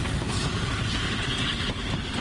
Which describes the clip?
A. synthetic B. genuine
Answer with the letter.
B